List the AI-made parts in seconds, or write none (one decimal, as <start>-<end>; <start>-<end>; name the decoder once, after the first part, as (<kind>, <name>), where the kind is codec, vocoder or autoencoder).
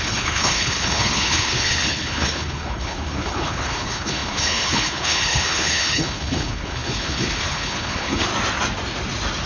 0.0-8.3 (codec, HILCodec)